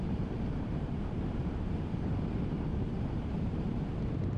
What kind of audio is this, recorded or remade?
remade